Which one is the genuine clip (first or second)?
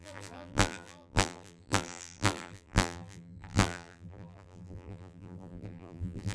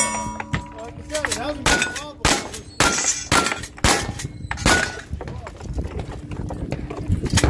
second